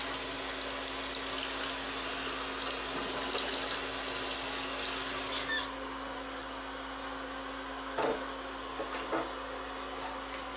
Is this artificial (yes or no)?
no